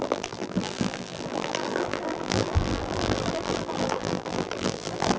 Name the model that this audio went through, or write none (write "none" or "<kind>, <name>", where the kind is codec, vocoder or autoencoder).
vocoder, BigVGAN v2